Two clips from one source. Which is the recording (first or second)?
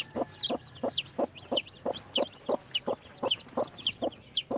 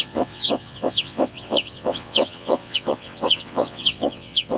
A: first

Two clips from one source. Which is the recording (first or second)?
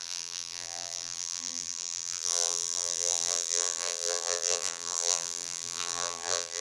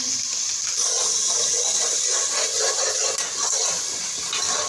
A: second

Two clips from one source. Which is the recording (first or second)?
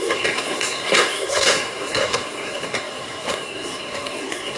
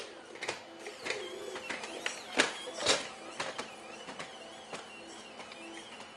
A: second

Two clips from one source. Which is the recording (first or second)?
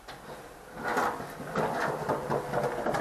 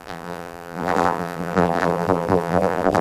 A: first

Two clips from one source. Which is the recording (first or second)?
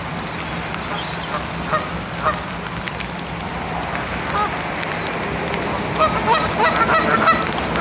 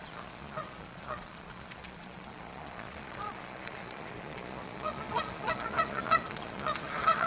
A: first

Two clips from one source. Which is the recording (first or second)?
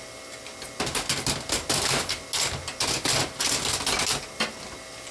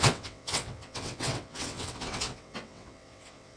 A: first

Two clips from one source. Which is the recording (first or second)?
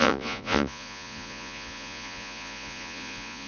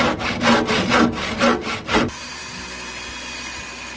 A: second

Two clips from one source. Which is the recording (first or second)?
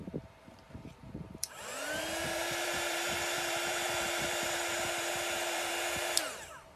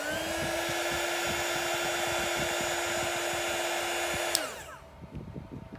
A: second